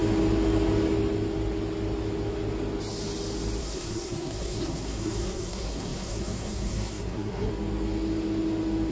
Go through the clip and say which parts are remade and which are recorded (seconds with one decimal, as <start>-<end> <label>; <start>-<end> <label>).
0.0-3.6 recorded; 3.6-7.5 remade; 7.5-8.9 recorded